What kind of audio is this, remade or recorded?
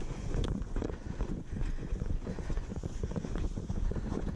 remade